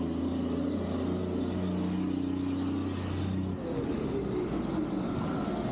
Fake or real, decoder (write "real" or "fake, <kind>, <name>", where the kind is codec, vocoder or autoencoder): real